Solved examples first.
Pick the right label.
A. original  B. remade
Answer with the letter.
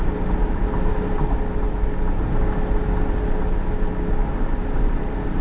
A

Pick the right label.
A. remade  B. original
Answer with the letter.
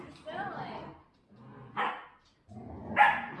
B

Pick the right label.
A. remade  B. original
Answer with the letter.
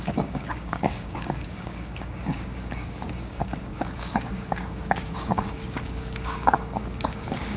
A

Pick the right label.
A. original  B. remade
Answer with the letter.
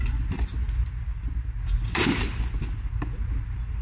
A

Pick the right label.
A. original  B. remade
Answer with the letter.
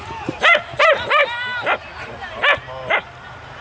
A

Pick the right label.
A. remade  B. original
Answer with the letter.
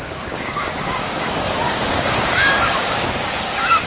A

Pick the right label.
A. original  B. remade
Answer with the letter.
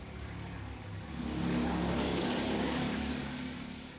B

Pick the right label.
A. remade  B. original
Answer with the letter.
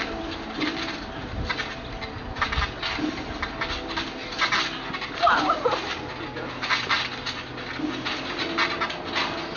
B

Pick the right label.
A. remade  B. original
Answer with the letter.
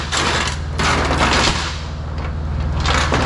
B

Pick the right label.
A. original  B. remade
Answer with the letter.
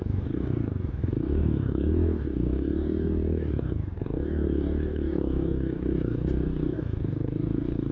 B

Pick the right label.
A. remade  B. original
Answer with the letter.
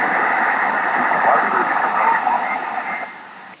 B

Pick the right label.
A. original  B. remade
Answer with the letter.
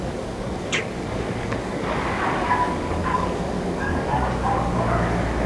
B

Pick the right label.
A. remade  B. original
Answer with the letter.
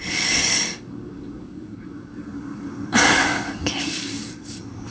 A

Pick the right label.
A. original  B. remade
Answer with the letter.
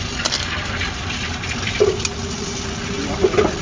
A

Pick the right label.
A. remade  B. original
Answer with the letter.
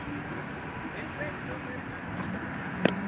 B